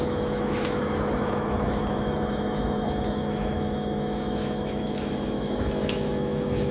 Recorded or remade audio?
remade